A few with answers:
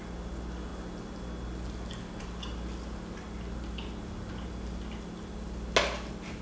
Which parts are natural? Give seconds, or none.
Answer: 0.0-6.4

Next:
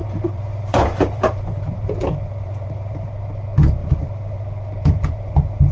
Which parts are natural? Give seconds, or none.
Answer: 3.1-3.8; 4.4-5.7